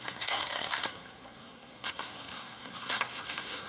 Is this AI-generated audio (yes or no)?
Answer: yes